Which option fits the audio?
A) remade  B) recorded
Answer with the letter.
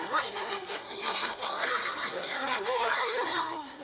A